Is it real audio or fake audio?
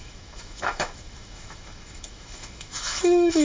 fake